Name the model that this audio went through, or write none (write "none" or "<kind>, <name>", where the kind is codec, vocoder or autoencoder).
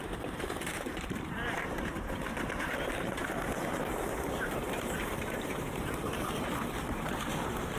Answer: vocoder, BigVGAN v2